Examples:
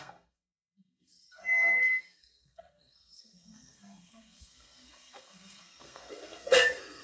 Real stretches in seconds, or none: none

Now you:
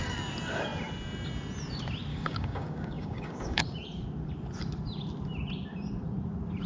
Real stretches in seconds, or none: 0.0-2.1; 3.6-6.7

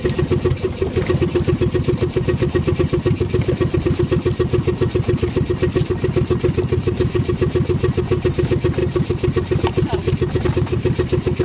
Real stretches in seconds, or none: 0.0-11.4

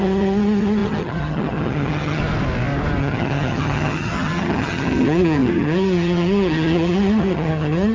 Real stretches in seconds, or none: 2.2-3.0

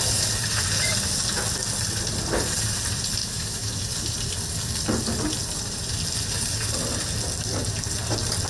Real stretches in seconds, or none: 0.0-3.2; 3.8-8.5

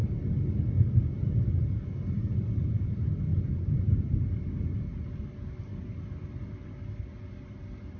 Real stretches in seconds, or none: 0.0-8.0

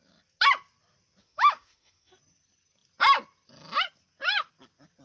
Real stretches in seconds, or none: 0.0-1.2; 2.1-5.0

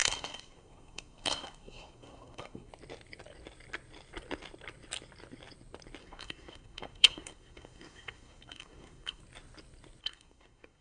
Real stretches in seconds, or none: 2.7-6.0; 9.2-10.0